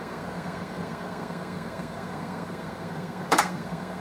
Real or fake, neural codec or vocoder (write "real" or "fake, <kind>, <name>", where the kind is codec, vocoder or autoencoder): fake, codec, SNAC